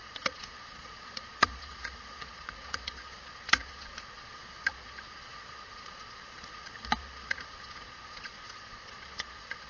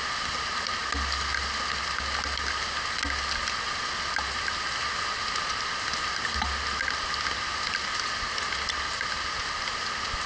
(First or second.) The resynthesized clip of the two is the first